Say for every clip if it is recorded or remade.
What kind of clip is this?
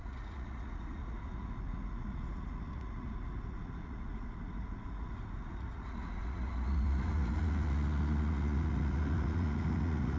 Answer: remade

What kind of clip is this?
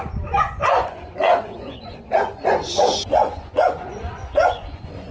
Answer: remade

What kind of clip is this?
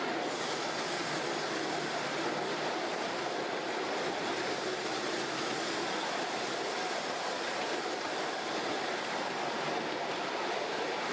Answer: recorded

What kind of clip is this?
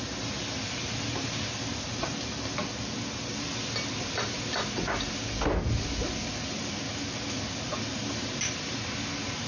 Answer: recorded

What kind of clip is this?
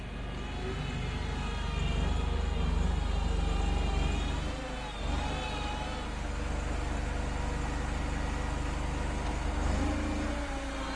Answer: recorded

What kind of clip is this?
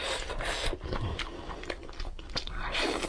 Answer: recorded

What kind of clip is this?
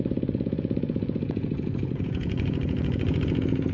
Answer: remade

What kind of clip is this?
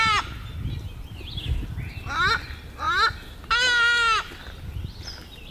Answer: recorded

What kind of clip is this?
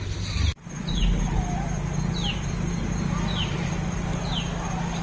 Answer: recorded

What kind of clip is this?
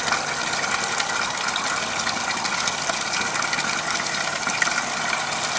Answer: recorded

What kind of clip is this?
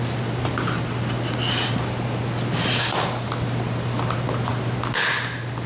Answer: recorded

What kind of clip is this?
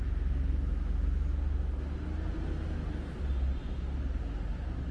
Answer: recorded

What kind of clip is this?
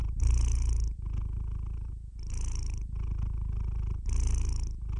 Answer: recorded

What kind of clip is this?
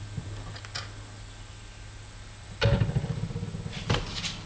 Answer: recorded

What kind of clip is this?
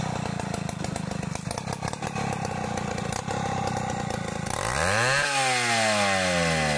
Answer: recorded